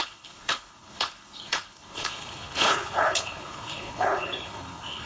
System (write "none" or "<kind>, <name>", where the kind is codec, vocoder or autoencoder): codec, HILCodec